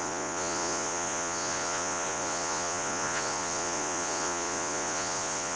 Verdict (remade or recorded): remade